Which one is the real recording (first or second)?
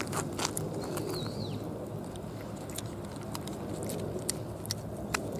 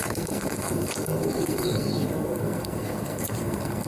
first